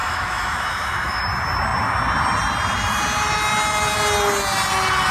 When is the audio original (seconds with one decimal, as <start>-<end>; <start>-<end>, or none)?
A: 1.2-5.1